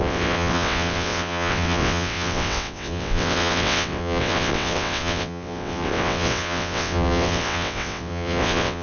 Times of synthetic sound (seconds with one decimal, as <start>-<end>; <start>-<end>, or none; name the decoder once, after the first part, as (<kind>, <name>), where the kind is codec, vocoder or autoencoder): 0.0-8.8 (vocoder, WaveNeXt)